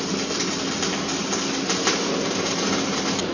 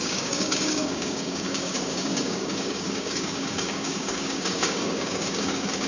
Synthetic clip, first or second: second